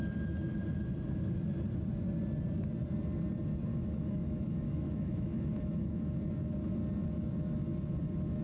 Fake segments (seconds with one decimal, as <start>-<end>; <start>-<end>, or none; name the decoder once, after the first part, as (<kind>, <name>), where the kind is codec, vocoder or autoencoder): 3.7-6.0 (autoencoder, DAC-VAE)